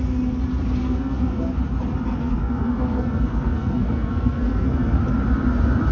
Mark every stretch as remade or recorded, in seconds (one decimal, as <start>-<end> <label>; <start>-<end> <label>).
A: 0.0-0.8 recorded; 0.8-1.5 remade; 1.5-2.1 recorded; 2.1-5.0 remade; 5.0-5.9 recorded